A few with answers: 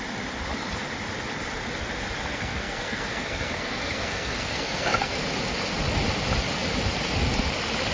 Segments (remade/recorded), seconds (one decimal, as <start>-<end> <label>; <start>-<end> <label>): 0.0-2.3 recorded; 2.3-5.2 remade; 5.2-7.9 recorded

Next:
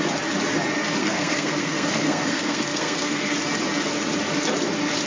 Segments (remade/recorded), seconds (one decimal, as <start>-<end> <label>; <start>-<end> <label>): 0.0-1.0 recorded; 1.0-3.3 remade; 3.3-5.1 recorded

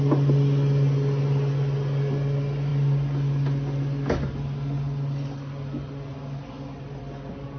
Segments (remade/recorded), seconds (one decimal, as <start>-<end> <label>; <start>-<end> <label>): 0.0-7.6 recorded